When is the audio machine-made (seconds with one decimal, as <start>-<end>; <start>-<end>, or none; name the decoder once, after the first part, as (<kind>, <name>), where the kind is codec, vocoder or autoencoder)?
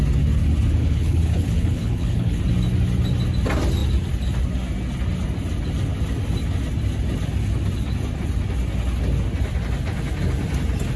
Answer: 0.8-2.4 (codec, HILCodec)